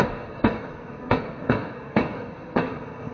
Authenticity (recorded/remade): remade